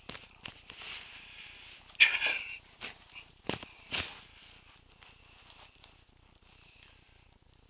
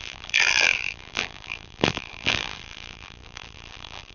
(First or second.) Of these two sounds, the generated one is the second